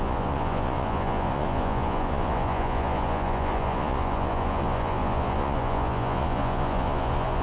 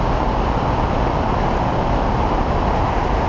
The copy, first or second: first